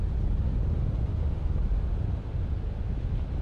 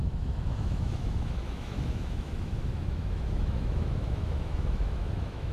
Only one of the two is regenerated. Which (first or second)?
second